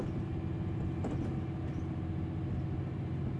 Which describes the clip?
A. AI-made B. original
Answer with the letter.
B